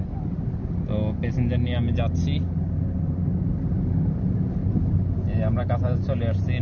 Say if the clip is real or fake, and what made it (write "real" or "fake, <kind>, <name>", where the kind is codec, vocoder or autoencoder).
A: real